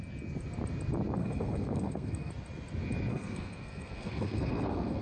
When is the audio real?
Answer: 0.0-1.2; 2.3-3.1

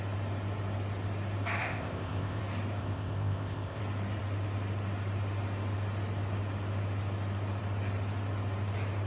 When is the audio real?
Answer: 0.0-1.6; 2.4-2.8; 3.8-9.1

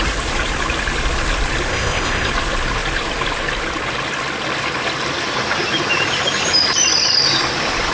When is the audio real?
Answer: 0.0-1.7; 2.3-7.9

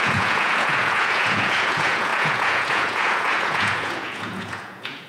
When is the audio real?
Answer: none

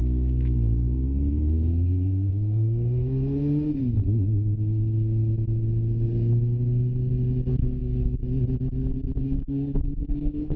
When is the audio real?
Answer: 3.8-7.5; 8.2-9.2

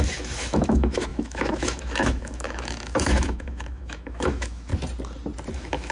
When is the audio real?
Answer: 4.7-5.5